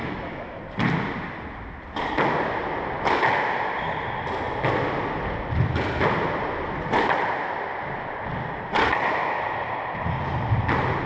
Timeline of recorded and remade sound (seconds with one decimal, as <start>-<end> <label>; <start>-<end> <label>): 0.0-0.6 remade; 0.6-11.1 recorded